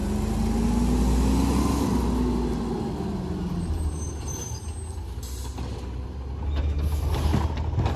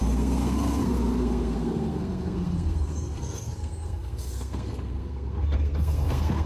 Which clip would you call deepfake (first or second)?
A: second